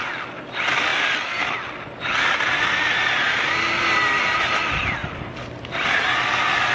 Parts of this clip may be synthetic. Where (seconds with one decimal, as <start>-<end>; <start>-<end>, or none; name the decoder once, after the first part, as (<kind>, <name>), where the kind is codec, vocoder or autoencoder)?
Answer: none